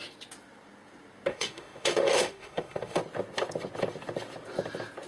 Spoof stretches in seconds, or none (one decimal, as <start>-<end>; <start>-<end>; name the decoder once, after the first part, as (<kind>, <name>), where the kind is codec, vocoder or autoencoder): 1.3-3.0 (autoencoder, DAC-VAE)